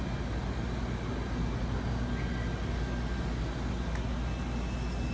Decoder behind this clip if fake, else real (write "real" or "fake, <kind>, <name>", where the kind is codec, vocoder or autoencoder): real